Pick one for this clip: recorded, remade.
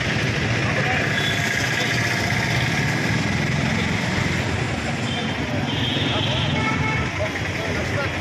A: recorded